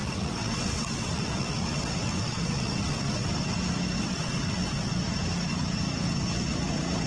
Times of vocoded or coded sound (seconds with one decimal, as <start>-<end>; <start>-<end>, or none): 0.0-3.3; 4.0-4.9